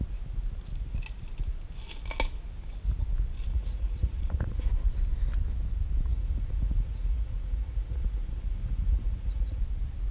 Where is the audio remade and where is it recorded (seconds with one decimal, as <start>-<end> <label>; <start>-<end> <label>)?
0.0-3.5 recorded; 3.5-4.7 remade; 4.7-6.1 recorded; 6.1-9.6 remade; 9.6-10.1 recorded